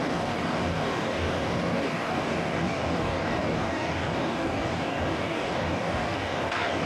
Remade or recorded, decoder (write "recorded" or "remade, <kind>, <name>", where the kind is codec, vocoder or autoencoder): remade, codec, DAC